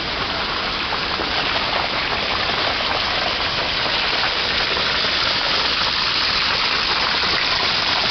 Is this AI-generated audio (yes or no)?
no